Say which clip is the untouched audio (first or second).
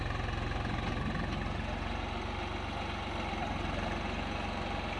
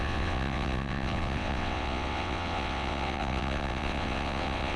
first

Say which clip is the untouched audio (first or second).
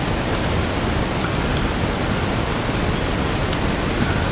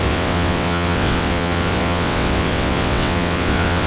first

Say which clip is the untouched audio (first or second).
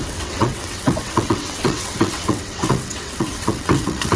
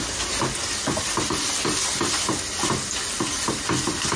second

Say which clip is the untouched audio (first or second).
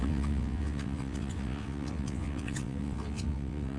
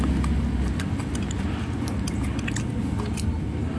second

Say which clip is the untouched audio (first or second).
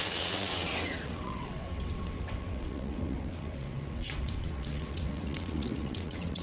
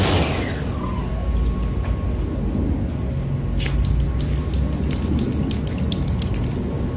second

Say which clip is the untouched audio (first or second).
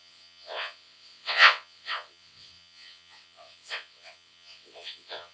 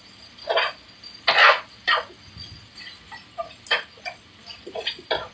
second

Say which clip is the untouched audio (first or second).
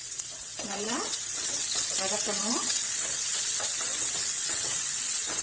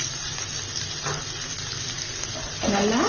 second